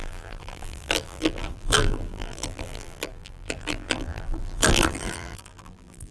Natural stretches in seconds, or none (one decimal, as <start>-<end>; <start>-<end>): none